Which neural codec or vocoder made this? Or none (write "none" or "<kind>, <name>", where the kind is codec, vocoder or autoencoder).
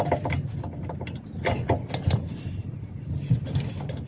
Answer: none